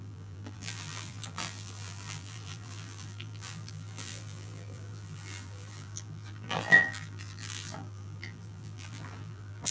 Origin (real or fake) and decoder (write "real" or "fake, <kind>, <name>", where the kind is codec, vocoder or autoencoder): fake, vocoder, BigVGAN v2